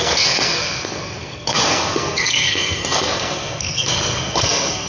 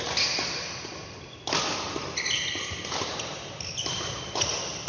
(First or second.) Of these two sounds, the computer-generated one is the first